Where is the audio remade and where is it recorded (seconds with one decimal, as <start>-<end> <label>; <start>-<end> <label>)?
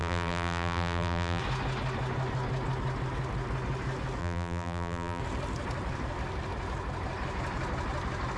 0.0-1.4 remade; 1.4-4.2 recorded; 4.2-5.2 remade; 5.2-8.4 recorded